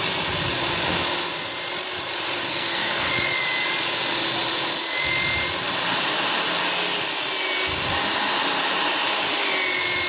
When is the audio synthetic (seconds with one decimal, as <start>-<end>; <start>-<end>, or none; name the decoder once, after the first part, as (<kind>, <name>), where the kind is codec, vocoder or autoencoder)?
2.5-3.1 (codec, SNAC)